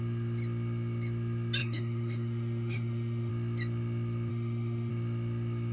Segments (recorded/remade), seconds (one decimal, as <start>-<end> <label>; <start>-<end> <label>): 0.0-1.6 recorded; 1.6-3.3 remade; 3.3-4.3 recorded; 4.3-4.9 remade; 4.9-5.7 recorded